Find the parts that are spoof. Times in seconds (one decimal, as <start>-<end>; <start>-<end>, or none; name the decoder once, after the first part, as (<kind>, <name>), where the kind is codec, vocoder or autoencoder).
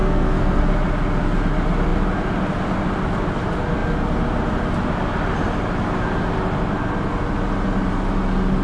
0.0-0.6 (codec, SNAC)